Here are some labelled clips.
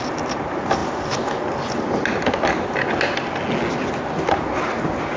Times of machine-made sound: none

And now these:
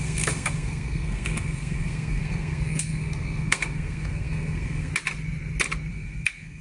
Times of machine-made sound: 0.0-4.9 (codec, SNAC); 5.9-6.6

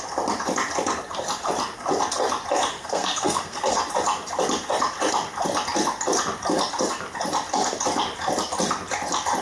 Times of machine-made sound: 2.7-3.8 (codec, SNAC)